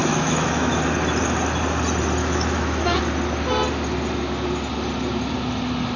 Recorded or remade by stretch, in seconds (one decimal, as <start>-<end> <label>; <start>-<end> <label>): 0.0-0.7 remade; 0.7-2.2 recorded; 2.2-3.0 remade; 3.0-6.0 recorded